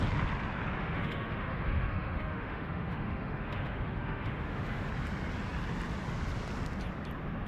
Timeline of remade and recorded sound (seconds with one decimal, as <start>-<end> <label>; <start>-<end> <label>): 0.0-0.8 recorded; 0.8-4.9 remade; 4.9-7.5 recorded